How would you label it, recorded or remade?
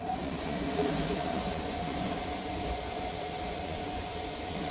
remade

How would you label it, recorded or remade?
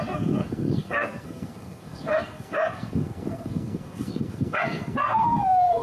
remade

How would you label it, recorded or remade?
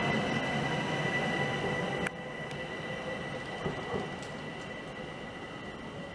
recorded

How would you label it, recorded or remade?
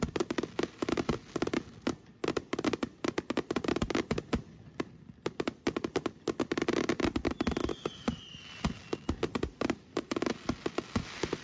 recorded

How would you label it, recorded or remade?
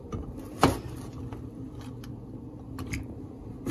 recorded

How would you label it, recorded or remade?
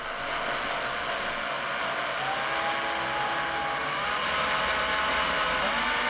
recorded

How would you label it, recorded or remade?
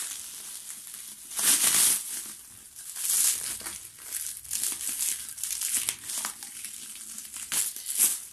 recorded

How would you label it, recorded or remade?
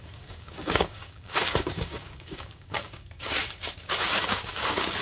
remade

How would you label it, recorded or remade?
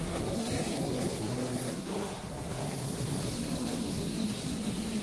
remade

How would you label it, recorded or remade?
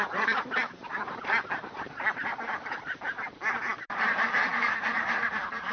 remade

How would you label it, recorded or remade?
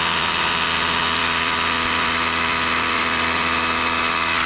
remade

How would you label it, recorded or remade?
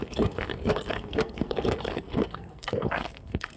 remade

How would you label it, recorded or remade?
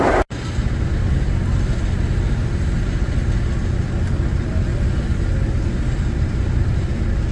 recorded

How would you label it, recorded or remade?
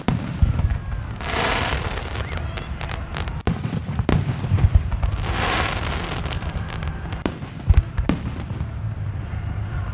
remade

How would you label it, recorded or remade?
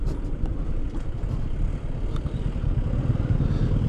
recorded